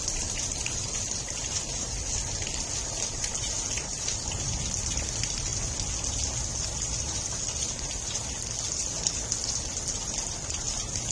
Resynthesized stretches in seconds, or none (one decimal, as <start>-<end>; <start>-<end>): none